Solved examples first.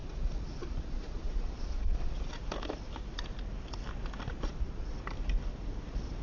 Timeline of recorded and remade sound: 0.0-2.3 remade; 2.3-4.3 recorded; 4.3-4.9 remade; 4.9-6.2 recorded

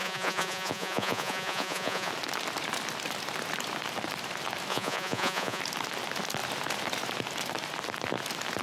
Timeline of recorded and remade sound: 0.0-2.1 remade; 2.1-4.7 recorded; 4.7-5.6 remade; 5.6-8.6 recorded

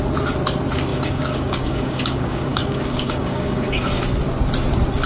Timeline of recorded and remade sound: 0.0-0.9 recorded; 0.9-4.0 remade; 4.0-5.1 recorded

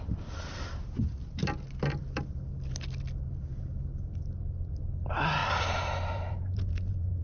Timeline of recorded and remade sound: 0.0-5.4 recorded; 5.4-7.2 remade

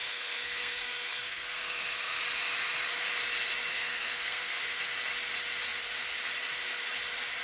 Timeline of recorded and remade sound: 0.0-2.2 remade; 2.2-3.7 recorded; 3.7-4.8 remade; 4.8-7.4 recorded

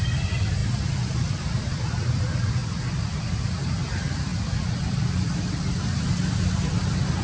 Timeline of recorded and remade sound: 0.0-7.2 recorded